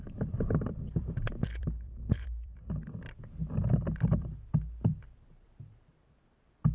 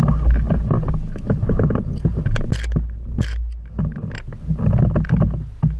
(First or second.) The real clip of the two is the second